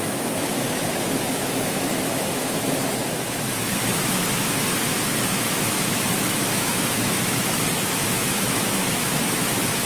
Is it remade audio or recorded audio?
remade